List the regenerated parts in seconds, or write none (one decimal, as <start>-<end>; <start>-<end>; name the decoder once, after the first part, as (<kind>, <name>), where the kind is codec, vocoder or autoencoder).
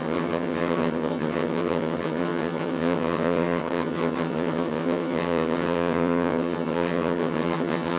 0.0-8.0 (vocoder, HiFi-GAN)